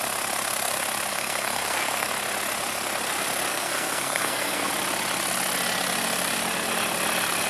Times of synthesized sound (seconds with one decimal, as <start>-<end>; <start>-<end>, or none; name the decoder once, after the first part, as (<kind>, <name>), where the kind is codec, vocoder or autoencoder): 1.1-2.1 (codec, SNAC); 3.5-4.7